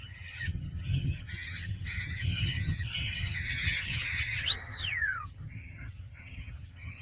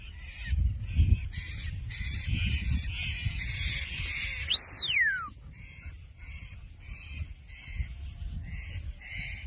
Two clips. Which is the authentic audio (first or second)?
second